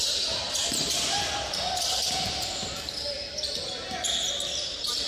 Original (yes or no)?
yes